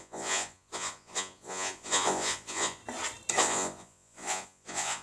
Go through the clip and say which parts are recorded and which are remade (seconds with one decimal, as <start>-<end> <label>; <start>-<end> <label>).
0.0-2.8 remade; 2.8-3.4 recorded; 3.4-5.0 remade